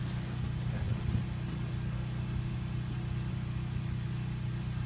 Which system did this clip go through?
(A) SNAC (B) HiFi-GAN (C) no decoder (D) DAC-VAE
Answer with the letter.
C